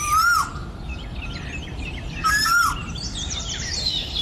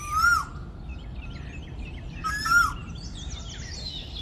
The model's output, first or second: first